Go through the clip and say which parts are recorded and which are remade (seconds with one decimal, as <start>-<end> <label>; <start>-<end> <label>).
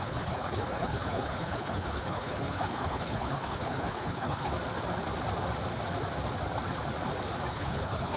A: 0.0-4.5 remade; 4.5-7.5 recorded; 7.5-8.2 remade